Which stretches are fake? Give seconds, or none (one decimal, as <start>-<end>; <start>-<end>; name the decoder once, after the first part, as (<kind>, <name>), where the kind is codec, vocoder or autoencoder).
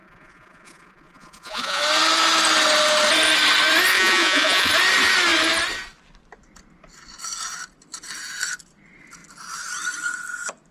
0.0-1.8 (vocoder, Vocos); 3.9-4.7